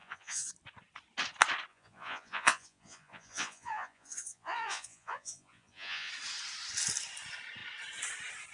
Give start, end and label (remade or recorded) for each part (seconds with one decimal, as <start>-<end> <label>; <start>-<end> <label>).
0.0-0.5 remade; 0.5-1.7 recorded; 1.7-6.1 remade; 6.1-8.5 recorded